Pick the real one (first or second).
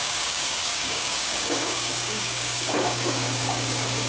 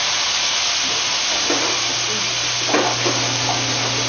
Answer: second